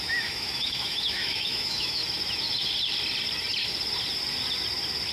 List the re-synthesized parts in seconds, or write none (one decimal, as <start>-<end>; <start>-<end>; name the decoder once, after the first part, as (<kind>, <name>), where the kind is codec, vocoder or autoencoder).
0.0-2.0 (autoencoder, DAC-VAE)